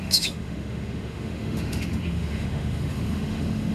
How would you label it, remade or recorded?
remade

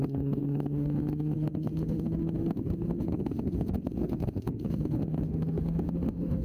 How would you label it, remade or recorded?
remade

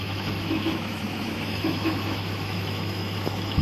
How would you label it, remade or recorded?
remade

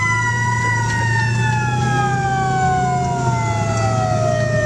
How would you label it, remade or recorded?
recorded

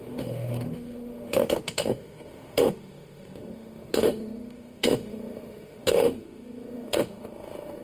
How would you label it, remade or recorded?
remade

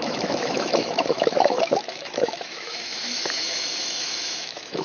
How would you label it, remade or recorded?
remade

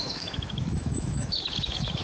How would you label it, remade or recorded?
remade